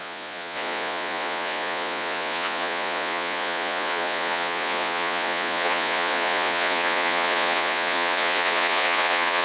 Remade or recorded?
remade